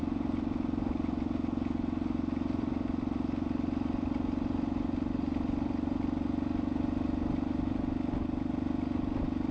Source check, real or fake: real